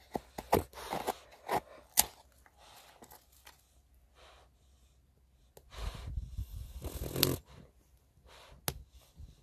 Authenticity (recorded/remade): recorded